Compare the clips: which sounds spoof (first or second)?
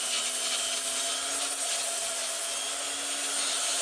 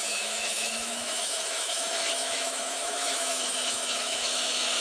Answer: second